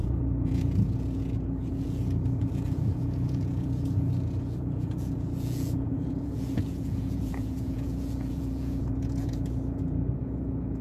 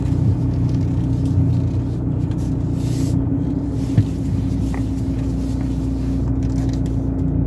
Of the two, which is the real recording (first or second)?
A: second